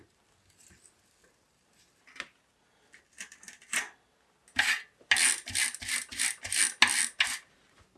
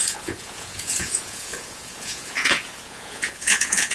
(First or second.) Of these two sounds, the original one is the first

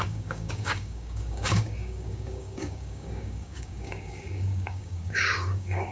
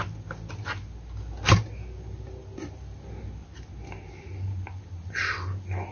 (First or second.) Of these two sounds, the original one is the second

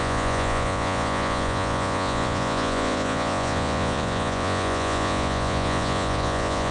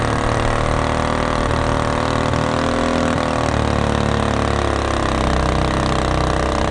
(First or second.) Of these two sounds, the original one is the second